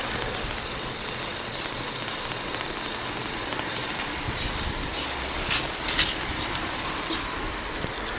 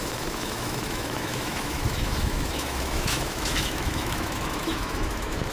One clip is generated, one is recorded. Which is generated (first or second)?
second